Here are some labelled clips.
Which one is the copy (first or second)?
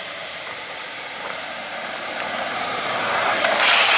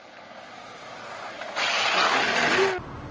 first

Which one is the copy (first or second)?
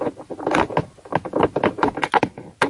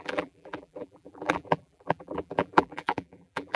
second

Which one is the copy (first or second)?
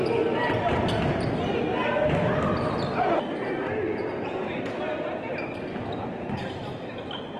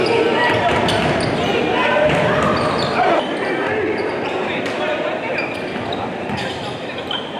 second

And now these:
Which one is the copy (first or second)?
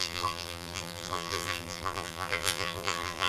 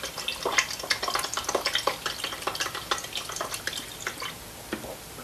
first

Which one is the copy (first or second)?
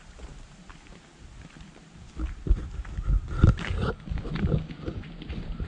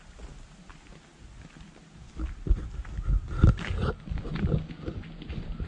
first